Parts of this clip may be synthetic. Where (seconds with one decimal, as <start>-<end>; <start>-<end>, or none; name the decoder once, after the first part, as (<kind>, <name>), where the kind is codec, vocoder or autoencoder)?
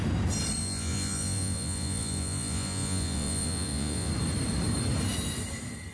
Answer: 0.6-4.1 (vocoder, Vocos)